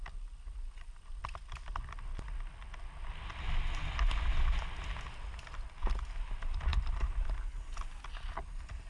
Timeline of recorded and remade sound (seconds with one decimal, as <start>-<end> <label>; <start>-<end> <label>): 0.0-8.9 recorded